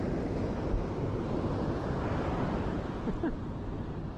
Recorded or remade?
recorded